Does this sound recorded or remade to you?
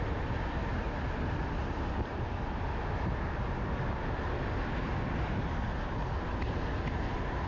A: recorded